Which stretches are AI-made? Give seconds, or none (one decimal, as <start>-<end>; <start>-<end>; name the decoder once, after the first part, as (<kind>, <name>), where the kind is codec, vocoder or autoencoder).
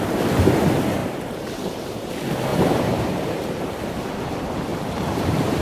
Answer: 1.0-2.1 (vocoder, BigVGAN v2); 2.5-4.0; 4.7-5.6